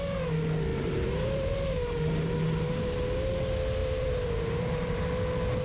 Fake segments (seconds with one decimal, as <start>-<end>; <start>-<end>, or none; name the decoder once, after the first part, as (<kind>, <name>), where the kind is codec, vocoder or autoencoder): 0.7-2.9 (vocoder, BigVGAN v2); 3.8-5.0